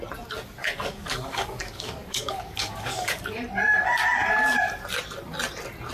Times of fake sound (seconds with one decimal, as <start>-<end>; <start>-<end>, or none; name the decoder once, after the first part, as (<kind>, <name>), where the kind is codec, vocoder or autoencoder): 0.6-3.2 (codec, DAC)